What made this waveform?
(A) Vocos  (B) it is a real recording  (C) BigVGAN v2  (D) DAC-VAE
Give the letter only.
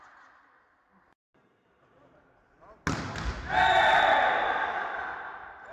B